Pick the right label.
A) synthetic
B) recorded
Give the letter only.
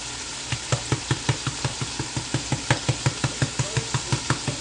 B